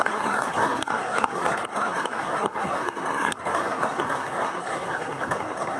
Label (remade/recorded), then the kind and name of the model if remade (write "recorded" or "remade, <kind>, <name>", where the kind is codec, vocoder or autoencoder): remade, codec, SNAC